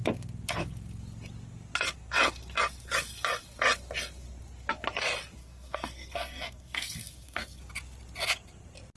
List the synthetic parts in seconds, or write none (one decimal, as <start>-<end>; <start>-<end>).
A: 5.4-7.6